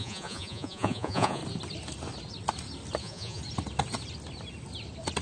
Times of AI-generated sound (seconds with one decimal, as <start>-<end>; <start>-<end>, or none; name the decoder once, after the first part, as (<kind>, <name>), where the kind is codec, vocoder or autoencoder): 0.0-1.4 (vocoder, Vocos); 3.0-3.4